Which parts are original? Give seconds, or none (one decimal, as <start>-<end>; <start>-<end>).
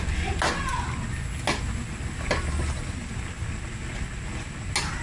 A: 0.0-5.0